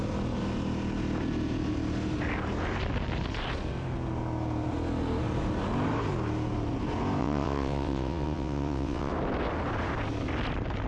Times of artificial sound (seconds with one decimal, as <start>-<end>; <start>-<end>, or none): 7.2-9.1